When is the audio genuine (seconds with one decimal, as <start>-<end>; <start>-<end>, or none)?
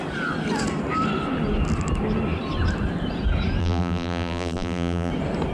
0.0-3.6; 5.1-5.5